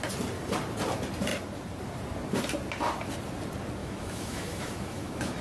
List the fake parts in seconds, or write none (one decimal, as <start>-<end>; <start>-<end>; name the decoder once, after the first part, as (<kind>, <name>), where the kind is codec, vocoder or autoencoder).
3.8-5.4 (autoencoder, DAC-VAE)

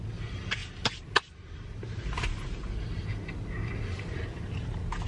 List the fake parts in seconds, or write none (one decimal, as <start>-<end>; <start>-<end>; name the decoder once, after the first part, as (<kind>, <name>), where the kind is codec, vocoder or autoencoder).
none

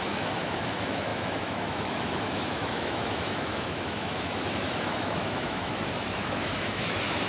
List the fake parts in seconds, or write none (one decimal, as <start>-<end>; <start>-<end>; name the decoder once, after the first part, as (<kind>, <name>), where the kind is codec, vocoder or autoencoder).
0.0-7.3 (autoencoder, DAC-VAE)

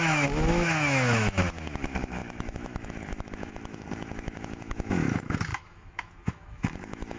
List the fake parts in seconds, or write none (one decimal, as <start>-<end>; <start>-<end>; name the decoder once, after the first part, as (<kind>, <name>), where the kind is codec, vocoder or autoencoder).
0.0-7.2 (autoencoder, DAC-VAE)

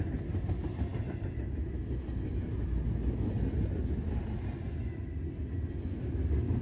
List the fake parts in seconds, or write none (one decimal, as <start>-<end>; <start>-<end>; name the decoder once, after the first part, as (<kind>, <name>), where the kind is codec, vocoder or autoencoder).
none

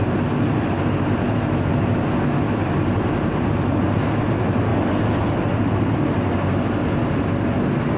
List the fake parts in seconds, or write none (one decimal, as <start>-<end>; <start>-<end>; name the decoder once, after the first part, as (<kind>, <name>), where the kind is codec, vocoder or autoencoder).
none

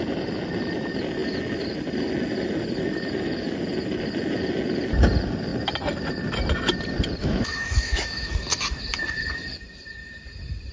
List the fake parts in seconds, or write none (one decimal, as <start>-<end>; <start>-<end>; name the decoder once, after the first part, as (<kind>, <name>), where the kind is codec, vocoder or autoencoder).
7.2-8.3 (autoencoder, DAC-VAE)

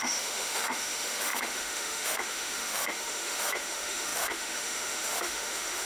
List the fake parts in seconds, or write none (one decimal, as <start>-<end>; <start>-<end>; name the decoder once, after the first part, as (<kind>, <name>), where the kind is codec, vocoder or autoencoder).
0.0-5.9 (autoencoder, DAC-VAE)